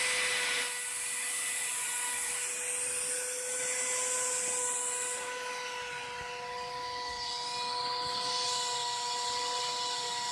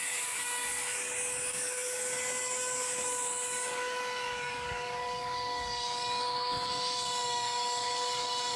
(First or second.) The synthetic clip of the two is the second